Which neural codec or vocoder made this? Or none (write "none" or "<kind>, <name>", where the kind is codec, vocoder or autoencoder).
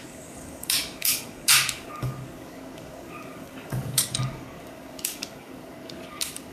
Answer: codec, DAC